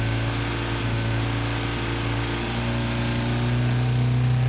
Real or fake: real